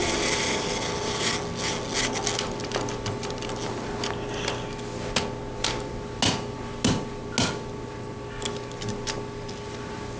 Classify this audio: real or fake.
real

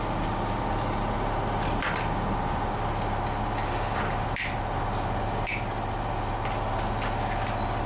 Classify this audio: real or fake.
real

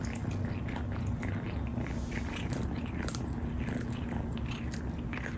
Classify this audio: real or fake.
real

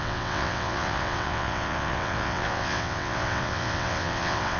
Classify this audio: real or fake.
fake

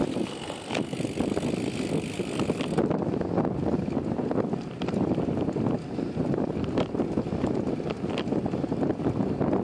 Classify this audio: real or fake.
real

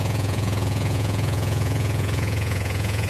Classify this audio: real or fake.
fake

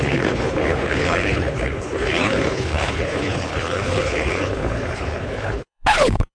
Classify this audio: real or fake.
fake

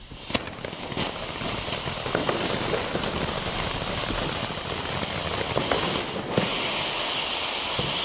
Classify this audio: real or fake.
real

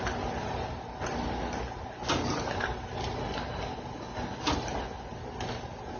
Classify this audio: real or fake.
real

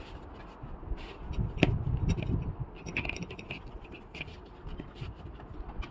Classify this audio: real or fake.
real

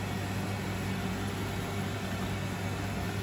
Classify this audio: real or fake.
real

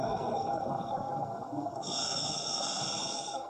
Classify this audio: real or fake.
fake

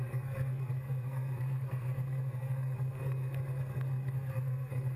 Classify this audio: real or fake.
fake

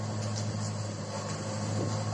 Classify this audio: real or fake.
real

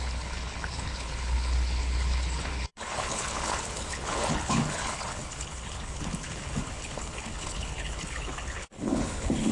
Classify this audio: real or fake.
fake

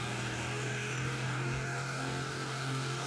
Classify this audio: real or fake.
fake